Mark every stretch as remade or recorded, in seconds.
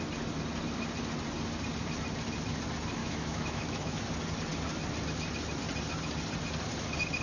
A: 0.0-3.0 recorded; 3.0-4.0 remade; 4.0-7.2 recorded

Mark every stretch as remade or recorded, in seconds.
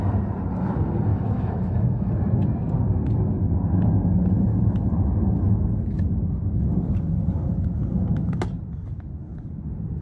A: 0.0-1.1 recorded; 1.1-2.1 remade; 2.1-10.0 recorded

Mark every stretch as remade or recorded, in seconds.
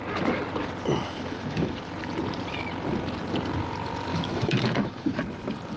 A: 0.0-1.0 recorded; 1.0-1.8 remade; 1.8-4.1 recorded; 4.1-5.2 remade; 5.2-5.8 recorded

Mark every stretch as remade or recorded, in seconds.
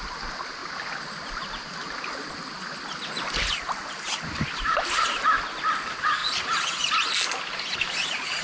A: 0.0-8.4 recorded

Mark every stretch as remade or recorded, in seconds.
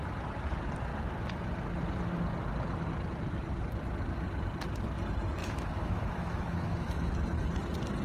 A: 0.0-5.4 recorded; 5.4-7.1 remade; 7.1-8.0 recorded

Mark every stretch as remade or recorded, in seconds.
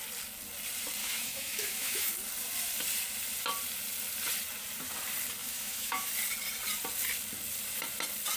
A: 0.0-1.0 recorded; 1.0-2.1 remade; 2.1-5.4 recorded; 5.4-6.1 remade; 6.1-8.4 recorded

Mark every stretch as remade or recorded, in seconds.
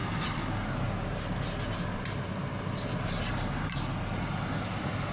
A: 0.0-5.1 recorded